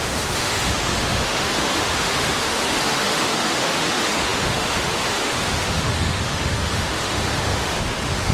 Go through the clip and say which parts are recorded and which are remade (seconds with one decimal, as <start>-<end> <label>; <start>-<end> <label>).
0.0-8.3 remade